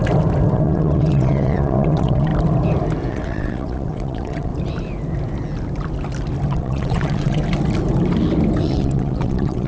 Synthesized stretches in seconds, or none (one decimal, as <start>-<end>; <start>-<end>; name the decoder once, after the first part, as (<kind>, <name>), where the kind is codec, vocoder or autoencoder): 0.5-2.3 (vocoder, WaveNeXt); 3.1-4.5; 6.5-7.4; 8.6-9.7